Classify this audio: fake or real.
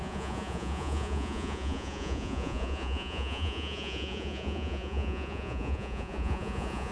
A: fake